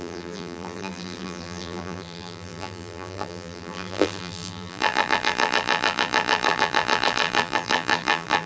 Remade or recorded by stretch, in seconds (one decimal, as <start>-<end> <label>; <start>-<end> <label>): 0.0-8.5 remade